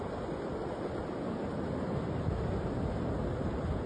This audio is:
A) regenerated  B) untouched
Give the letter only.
B